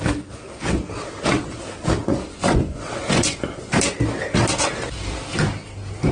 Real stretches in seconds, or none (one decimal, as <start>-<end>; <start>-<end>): 0.0-2.0; 3.8-6.1